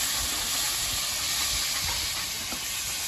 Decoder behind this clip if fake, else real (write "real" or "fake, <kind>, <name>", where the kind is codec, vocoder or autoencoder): real